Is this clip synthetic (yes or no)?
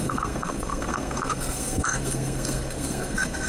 yes